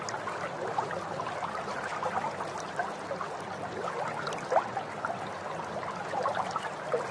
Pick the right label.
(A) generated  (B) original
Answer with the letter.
B